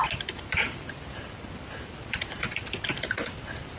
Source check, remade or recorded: recorded